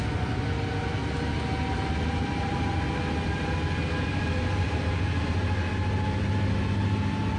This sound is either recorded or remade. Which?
recorded